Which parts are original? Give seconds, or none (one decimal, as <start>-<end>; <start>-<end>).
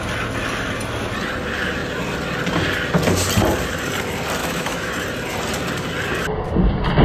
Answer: 0.0-4.4; 4.9-7.0